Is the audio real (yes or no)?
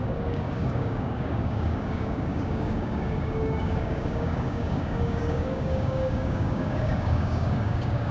no